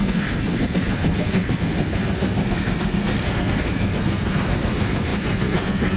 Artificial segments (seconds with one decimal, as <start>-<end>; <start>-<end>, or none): 0.0-6.0